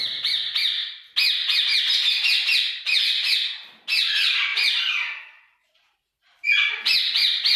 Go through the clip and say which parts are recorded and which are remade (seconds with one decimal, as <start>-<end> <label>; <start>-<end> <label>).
0.0-4.5 recorded; 4.5-6.2 remade; 6.2-7.6 recorded